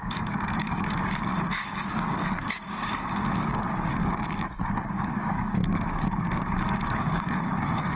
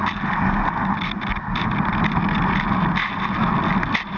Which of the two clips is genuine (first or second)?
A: second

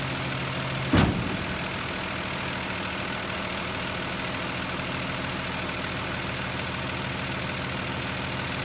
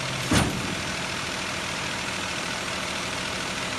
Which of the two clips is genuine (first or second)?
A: first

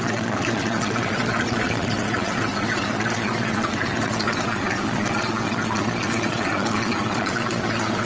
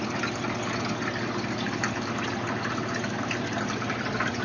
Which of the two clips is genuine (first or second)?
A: second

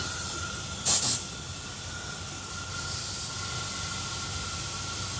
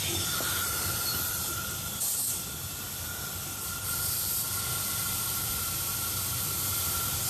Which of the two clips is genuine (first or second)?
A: first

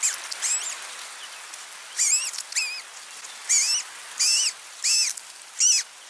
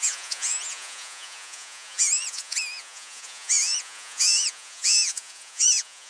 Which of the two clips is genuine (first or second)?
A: first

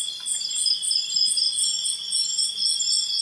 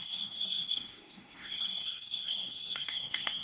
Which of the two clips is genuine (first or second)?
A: first